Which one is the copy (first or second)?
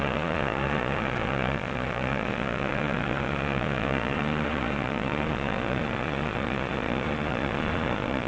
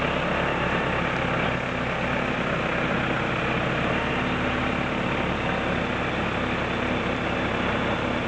first